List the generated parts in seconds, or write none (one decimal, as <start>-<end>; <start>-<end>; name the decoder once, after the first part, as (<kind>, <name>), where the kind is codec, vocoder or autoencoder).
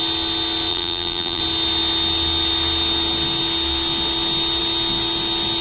0.7-1.4 (vocoder, BigVGAN v2)